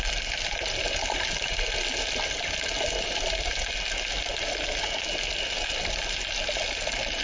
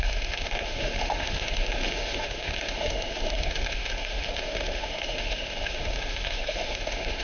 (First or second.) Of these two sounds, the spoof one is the second